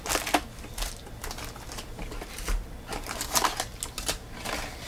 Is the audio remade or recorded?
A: recorded